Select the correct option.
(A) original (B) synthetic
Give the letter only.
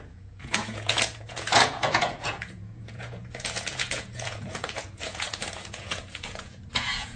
B